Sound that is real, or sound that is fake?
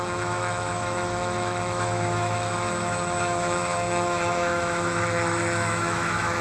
fake